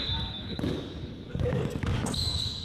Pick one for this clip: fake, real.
fake